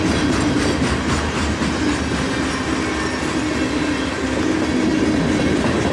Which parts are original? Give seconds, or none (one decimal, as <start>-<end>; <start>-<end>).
0.0-5.9